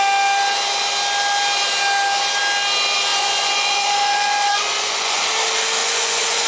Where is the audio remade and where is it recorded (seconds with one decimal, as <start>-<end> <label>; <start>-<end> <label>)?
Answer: 0.0-3.1 recorded; 3.1-5.3 remade; 5.3-5.8 recorded; 5.8-6.5 remade